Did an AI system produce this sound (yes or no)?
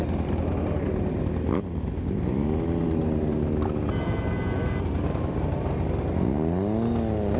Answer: no